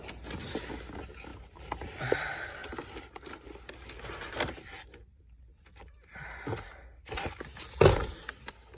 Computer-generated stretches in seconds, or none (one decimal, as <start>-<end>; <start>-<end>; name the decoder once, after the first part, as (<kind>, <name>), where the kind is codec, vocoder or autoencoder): none